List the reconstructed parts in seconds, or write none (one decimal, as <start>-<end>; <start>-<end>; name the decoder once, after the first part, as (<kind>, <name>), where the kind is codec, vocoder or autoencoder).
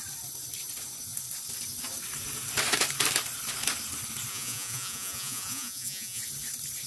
4.3-6.2 (vocoder, Vocos)